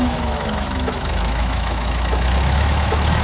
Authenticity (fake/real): fake